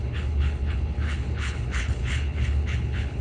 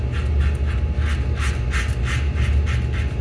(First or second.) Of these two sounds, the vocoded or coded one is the first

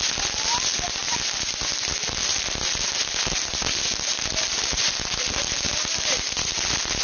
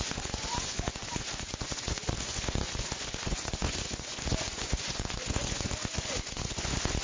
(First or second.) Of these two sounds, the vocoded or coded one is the second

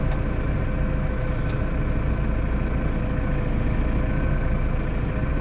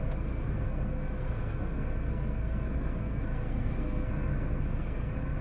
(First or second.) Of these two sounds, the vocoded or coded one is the second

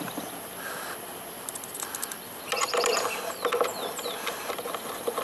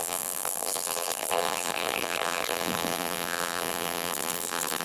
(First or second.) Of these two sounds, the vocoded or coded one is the second